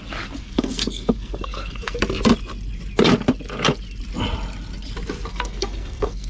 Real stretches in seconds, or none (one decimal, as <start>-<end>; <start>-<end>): 0.0-0.4; 2.0-5.3